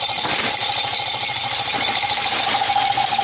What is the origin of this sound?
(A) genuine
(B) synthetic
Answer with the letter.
A